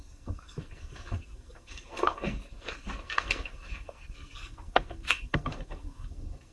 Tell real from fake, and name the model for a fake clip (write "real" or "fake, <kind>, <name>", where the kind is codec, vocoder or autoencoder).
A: fake, codec, SNAC